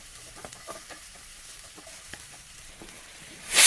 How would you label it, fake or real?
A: fake